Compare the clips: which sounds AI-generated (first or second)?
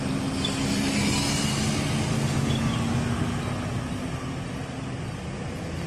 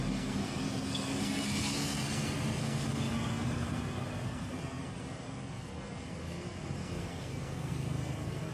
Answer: second